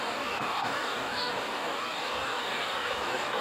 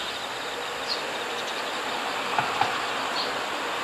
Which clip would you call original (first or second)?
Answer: second